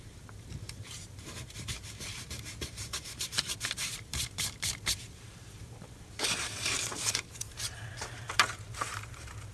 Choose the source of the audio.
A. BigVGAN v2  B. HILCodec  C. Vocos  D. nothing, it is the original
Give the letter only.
A